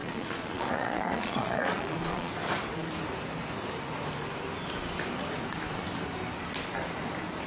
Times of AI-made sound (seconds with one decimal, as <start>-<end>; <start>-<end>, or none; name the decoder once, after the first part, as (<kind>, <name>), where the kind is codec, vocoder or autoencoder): 0.0-2.3 (vocoder, Vocos)